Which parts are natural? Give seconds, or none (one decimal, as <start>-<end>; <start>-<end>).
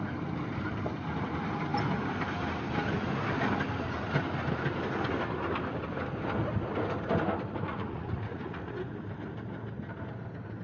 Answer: 0.0-7.7; 8.7-10.6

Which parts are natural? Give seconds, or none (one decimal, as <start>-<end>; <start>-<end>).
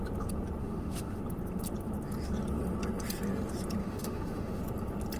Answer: 0.0-0.6; 1.2-3.8; 4.6-5.2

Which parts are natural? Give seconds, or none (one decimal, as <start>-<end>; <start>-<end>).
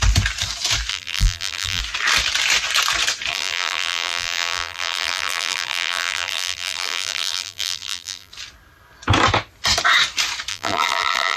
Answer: 0.0-0.9; 1.8-3.3; 8.3-10.5